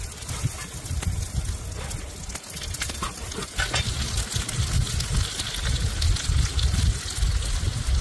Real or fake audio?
real